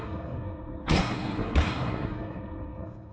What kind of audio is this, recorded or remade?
remade